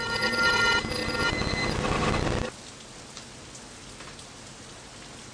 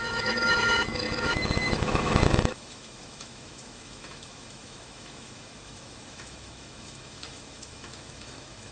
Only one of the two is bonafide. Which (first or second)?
first